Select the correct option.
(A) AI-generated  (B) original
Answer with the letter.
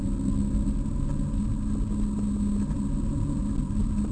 B